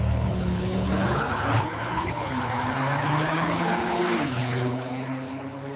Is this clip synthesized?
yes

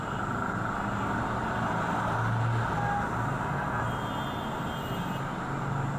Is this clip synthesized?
no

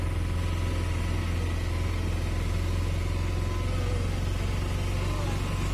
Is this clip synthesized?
no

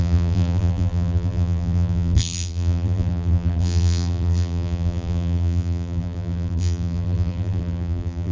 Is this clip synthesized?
yes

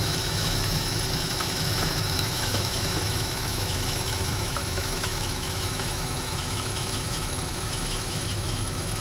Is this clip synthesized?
yes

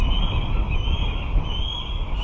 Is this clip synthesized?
no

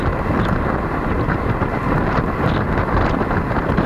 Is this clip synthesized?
no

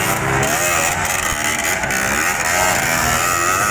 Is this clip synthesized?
no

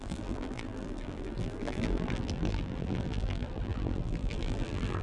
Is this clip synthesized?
yes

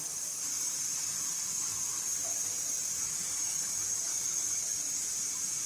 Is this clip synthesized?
yes